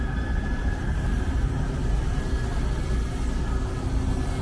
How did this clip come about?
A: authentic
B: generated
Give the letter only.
A